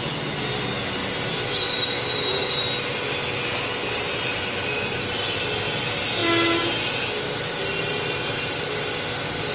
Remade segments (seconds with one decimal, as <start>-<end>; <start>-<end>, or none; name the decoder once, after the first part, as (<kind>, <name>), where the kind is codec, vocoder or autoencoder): none